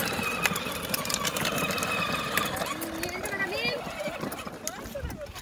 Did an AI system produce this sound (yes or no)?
no